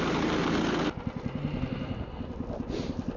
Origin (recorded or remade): recorded